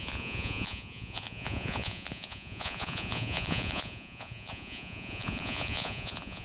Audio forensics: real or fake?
fake